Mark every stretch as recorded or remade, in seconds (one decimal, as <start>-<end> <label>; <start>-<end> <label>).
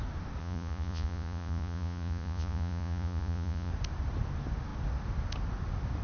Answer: 0.0-0.4 recorded; 0.4-3.7 remade; 3.7-6.0 recorded